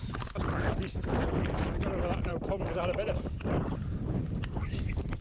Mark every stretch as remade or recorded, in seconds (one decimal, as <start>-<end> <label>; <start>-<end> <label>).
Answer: 0.0-5.2 recorded